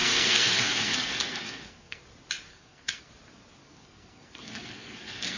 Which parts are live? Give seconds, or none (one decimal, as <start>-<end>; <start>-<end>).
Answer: 2.0-2.5; 3.1-3.6